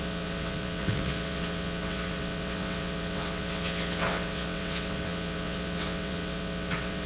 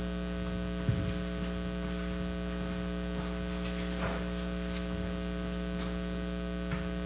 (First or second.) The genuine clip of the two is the second